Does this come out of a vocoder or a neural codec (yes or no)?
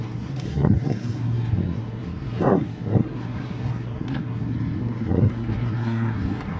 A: yes